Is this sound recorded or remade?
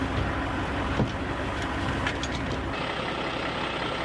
recorded